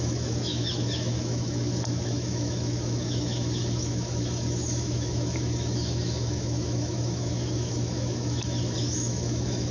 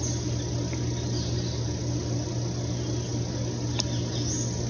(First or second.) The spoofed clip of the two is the first